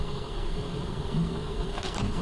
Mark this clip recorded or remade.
remade